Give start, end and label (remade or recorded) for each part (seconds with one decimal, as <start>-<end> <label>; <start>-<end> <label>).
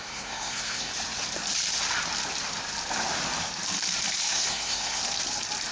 0.0-0.9 remade; 0.9-4.3 recorded; 4.3-5.0 remade; 5.0-5.7 recorded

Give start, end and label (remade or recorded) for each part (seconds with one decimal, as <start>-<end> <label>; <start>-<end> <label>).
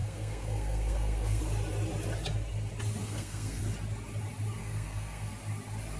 0.0-1.4 remade; 1.4-3.0 recorded; 3.0-3.6 remade; 3.6-4.6 recorded; 4.6-5.3 remade; 5.3-6.0 recorded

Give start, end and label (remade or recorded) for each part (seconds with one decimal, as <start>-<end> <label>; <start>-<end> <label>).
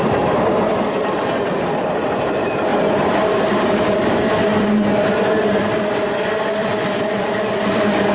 0.0-2.7 remade; 2.7-3.6 recorded; 3.6-4.5 remade; 4.5-5.3 recorded; 5.3-8.1 remade